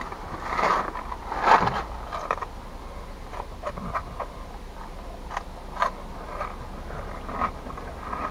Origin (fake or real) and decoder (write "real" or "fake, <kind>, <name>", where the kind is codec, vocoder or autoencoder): real